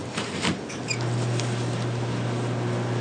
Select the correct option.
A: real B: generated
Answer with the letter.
A